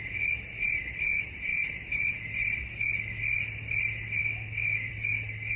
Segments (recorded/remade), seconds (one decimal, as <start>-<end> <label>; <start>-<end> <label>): 0.0-4.2 recorded; 4.2-4.9 remade; 4.9-5.6 recorded